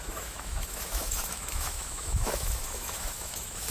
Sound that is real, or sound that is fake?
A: fake